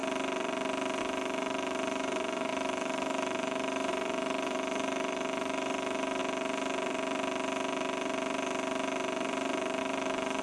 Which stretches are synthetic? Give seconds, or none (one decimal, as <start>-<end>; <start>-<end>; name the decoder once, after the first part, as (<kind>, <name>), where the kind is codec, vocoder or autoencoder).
1.0-6.2 (autoencoder, DAC-VAE); 9.8-10.4